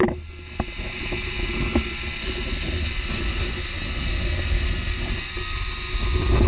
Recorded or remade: recorded